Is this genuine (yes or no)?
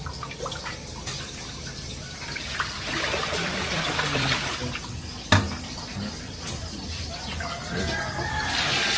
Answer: no